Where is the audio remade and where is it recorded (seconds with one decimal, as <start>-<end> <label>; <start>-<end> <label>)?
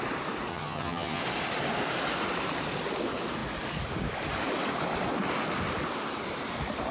0.0-0.5 recorded; 0.5-1.2 remade; 1.2-6.9 recorded